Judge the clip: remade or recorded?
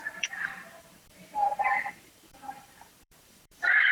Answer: remade